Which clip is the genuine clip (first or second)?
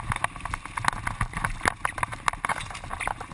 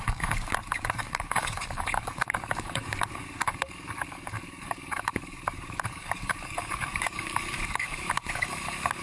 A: first